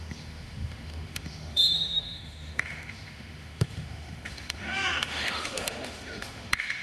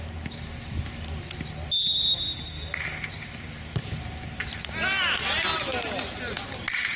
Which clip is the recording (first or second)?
second